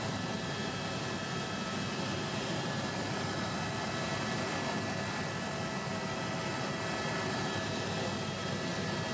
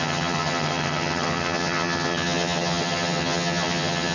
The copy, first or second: second